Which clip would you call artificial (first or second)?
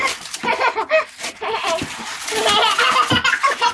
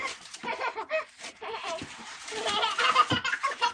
second